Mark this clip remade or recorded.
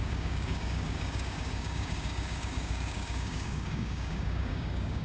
remade